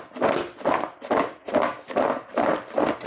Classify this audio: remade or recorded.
recorded